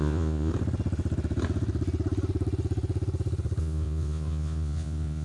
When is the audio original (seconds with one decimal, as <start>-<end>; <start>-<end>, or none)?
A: 0.5-3.6